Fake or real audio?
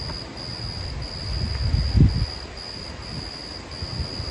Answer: real